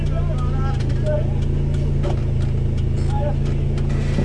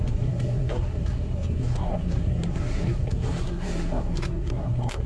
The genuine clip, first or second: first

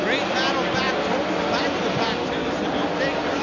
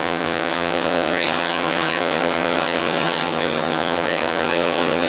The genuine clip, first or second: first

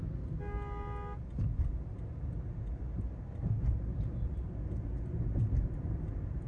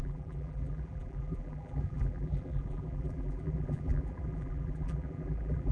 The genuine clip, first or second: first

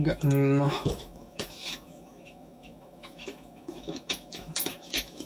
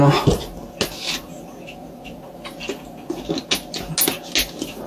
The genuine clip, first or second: second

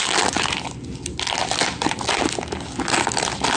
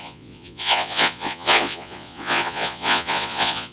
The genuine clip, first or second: first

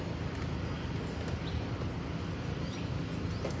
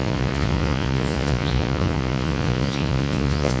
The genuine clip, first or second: first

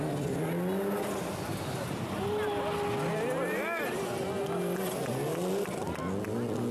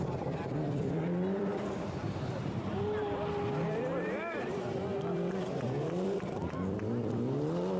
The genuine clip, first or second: first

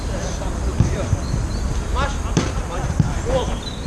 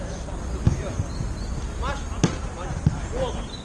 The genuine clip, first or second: second